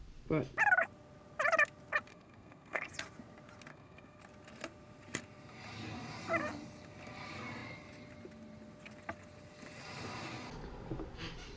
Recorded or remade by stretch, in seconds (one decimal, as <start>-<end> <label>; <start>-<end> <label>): 0.0-2.1 recorded; 2.1-2.9 remade; 2.9-3.7 recorded; 3.7-4.2 remade; 4.2-11.6 recorded